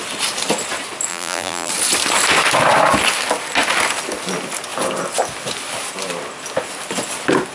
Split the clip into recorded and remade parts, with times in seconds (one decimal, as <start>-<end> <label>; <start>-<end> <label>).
0.0-1.1 recorded; 1.1-1.7 remade; 1.7-7.5 recorded